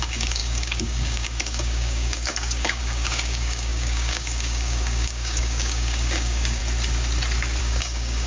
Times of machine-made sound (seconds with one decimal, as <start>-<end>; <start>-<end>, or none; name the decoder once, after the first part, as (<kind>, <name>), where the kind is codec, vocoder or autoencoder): 0.0-6.6 (codec, DAC); 7.6-8.3